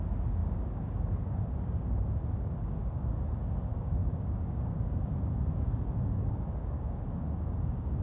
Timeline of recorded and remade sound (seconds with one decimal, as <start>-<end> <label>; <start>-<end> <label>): 0.0-8.0 remade